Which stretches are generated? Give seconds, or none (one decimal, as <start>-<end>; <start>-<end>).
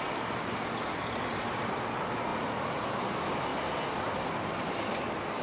none